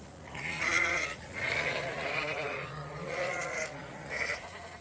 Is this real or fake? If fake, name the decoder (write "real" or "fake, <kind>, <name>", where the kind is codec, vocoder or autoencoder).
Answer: fake, vocoder, Vocos